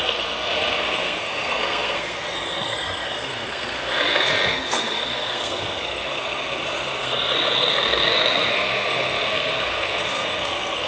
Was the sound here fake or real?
fake